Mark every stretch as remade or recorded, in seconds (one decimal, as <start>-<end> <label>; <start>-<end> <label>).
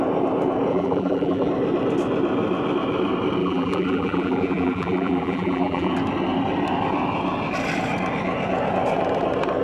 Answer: 0.0-0.7 recorded; 0.7-1.5 remade; 1.5-3.4 recorded; 3.4-5.9 remade; 5.9-9.6 recorded